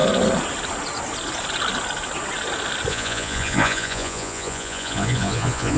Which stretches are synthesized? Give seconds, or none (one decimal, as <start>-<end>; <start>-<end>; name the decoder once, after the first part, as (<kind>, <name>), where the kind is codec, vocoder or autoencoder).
2.9-5.8 (vocoder, Vocos)